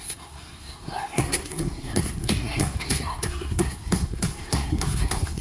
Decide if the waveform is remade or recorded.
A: remade